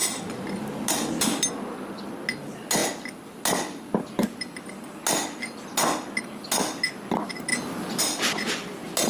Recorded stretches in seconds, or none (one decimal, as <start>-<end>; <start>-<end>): 0.0-9.1